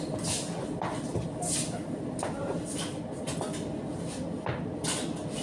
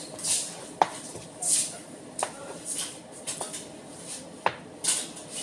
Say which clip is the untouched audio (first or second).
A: first